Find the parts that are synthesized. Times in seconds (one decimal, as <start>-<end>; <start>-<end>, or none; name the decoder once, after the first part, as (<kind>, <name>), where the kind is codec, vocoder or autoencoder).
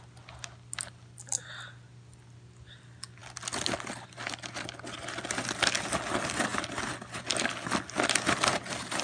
none